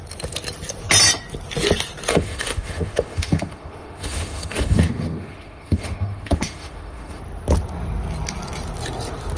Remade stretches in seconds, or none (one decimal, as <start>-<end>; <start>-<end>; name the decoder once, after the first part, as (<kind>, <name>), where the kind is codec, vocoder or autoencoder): 2.1-7.2 (autoencoder, DAC-VAE)